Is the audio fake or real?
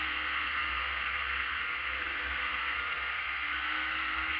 fake